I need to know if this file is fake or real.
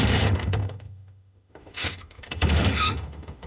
fake